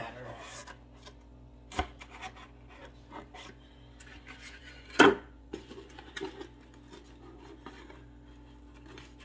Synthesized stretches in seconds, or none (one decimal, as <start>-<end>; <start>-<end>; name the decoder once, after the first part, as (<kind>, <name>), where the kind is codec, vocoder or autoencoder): 4.6-6.1 (vocoder, Vocos)